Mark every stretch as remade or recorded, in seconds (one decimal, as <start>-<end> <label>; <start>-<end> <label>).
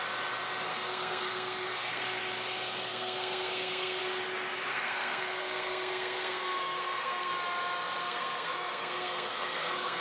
0.0-0.7 recorded; 0.7-2.2 remade; 2.2-2.9 recorded; 2.9-4.0 remade; 4.0-4.7 recorded; 4.7-7.3 remade; 7.3-8.0 recorded; 8.0-10.0 remade